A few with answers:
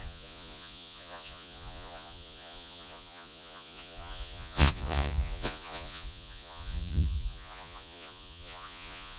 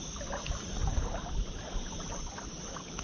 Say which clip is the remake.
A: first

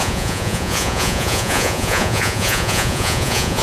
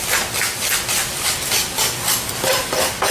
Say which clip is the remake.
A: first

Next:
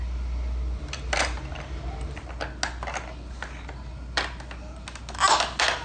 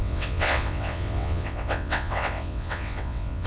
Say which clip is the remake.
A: second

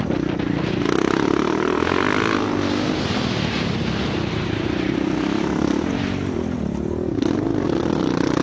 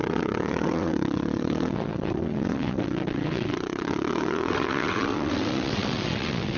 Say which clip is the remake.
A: second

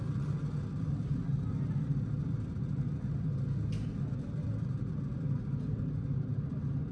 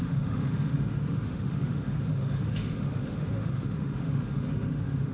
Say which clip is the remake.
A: second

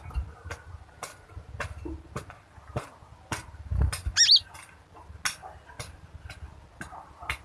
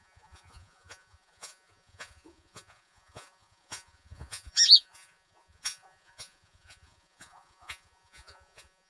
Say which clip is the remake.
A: second